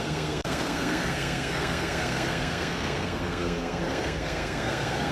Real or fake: fake